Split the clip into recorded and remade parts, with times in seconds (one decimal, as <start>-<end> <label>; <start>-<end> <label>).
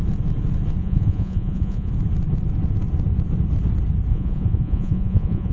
0.0-0.8 recorded; 0.8-1.9 remade; 1.9-4.1 recorded; 4.1-5.5 remade